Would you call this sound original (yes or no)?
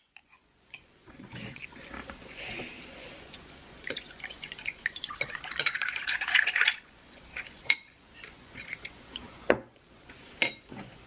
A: no